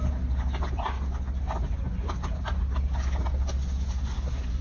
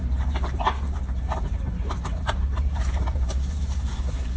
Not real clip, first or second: second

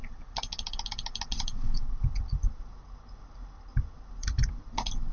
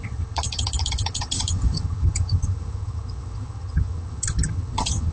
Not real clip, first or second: second